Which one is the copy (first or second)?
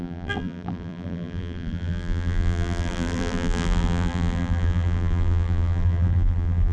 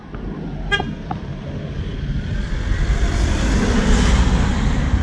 first